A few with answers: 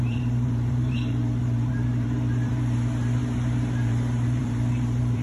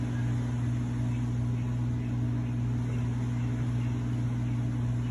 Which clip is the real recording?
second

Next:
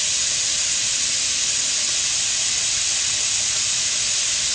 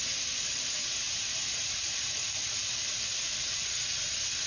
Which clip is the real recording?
first